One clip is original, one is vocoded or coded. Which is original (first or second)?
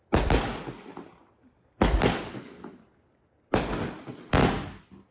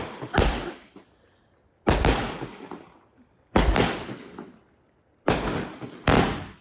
first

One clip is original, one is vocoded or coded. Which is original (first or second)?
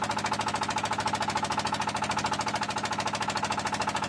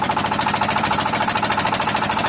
first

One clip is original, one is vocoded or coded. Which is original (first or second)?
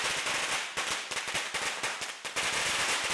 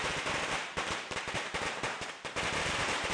first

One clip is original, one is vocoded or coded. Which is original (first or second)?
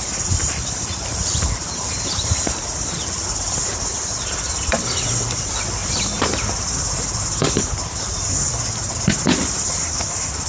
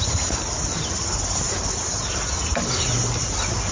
second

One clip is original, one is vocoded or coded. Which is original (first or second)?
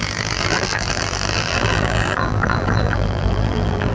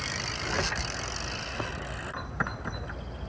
second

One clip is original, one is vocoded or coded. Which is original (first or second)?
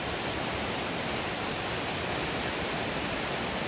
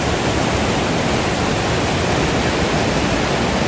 second